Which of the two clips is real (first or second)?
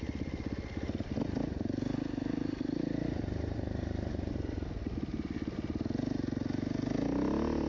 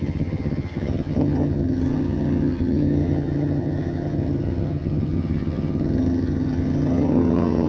first